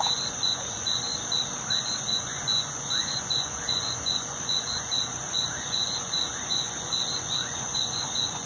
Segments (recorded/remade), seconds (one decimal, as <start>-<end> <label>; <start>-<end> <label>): 0.0-1.1 remade; 1.1-1.8 recorded; 1.8-8.5 remade